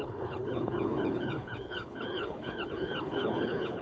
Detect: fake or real fake